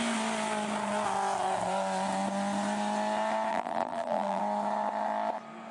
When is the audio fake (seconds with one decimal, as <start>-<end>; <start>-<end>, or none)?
3.5-4.4